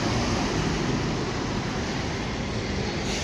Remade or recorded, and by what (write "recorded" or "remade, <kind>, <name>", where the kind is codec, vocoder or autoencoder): recorded